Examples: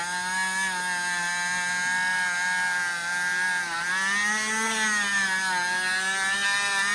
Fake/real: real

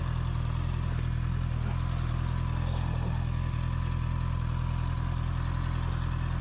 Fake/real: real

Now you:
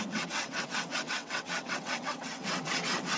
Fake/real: fake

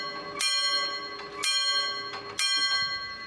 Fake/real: real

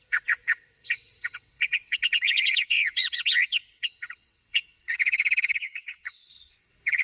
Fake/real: fake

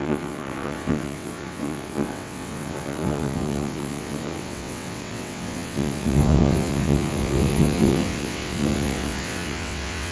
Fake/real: fake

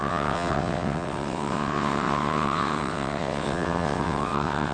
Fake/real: fake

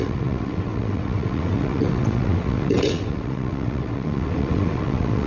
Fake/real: fake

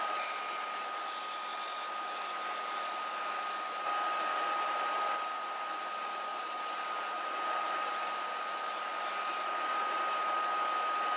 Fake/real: real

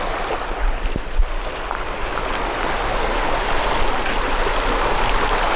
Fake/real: real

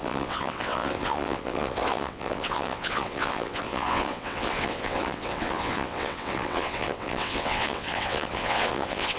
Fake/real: fake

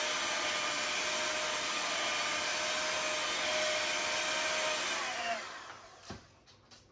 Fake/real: real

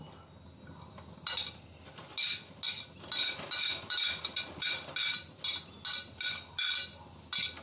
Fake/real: real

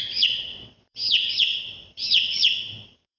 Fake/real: fake